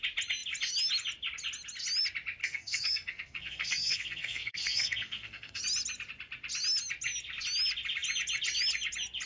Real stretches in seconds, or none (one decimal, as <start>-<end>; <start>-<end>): 0.0-2.4; 5.6-9.3